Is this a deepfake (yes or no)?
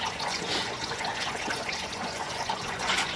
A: yes